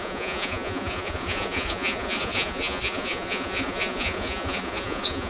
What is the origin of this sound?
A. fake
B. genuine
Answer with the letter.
A